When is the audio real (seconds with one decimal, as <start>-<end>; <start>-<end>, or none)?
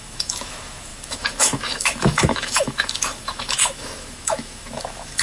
none